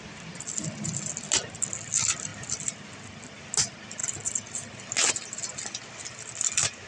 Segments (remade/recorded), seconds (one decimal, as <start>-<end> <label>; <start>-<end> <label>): 0.0-6.9 recorded